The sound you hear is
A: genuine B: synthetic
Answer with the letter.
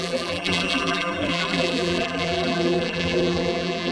B